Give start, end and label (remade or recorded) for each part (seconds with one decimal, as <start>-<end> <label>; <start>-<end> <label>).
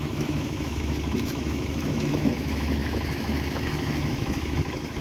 0.0-5.0 remade